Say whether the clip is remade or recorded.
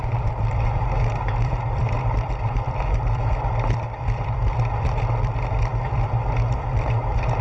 remade